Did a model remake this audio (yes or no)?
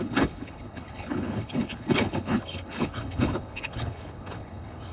yes